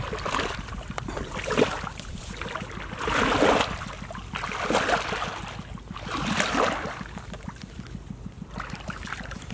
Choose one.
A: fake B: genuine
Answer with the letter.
B